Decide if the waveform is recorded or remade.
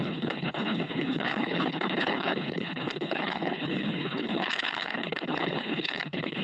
remade